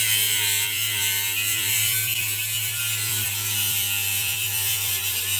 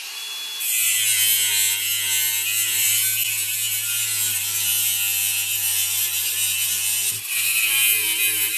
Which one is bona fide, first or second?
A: second